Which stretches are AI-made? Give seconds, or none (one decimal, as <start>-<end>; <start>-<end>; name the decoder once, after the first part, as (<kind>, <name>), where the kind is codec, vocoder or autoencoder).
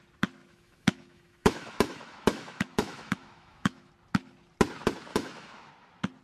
0.4-3.9 (autoencoder, DAC-VAE); 5.1-5.7